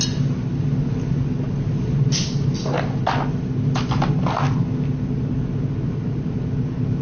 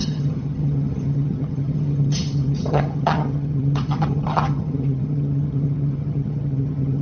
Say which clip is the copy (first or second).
second